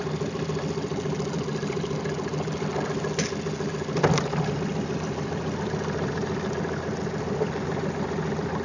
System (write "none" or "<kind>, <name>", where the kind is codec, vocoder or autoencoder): none